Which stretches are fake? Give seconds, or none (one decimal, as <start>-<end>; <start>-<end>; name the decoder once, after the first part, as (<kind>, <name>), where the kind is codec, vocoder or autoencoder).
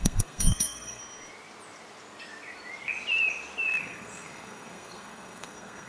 0.0-1.0 (codec, SNAC); 3.8-5.9